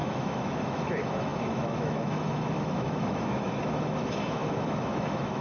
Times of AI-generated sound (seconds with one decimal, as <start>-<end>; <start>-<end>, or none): 0.0-5.4